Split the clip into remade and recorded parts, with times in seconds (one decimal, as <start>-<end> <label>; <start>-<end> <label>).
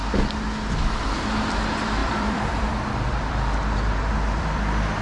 0.0-2.0 recorded; 2.0-5.0 remade